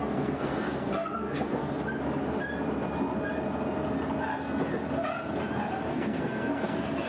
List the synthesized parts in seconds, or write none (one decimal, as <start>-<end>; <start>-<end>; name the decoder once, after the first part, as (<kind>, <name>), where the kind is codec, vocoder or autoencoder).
0.0-1.6 (codec, SNAC); 5.9-7.1